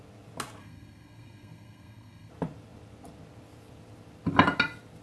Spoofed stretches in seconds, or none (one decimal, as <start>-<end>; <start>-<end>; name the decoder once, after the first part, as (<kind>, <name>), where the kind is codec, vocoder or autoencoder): 0.6-2.3 (codec, SNAC)